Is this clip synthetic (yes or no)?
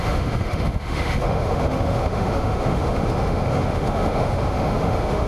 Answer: yes